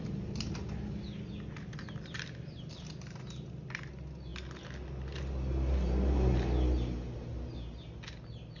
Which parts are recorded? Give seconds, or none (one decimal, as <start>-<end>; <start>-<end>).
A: 0.0-8.6

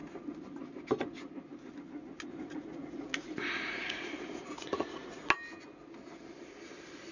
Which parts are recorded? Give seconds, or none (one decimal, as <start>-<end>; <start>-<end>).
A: 0.0-2.3; 5.3-7.1

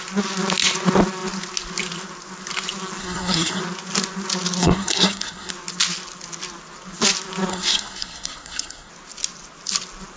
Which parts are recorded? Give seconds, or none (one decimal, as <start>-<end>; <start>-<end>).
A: 0.0-3.0; 3.6-4.6; 5.5-7.5; 8.9-10.2

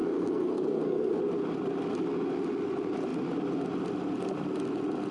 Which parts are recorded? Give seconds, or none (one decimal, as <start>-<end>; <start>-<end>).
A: 1.2-5.1

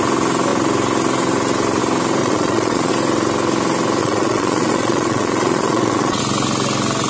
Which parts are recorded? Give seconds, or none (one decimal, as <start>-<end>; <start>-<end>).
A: 0.0-2.2; 2.9-4.0; 6.2-7.1

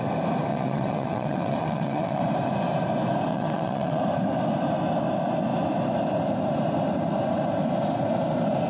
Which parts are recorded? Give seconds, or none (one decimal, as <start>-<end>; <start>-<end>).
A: 0.0-0.5; 2.2-3.3; 4.0-8.7

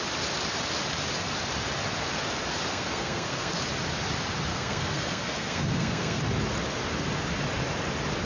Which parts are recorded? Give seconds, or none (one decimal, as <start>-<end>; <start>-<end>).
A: 0.0-2.7; 3.6-4.5; 6.2-8.3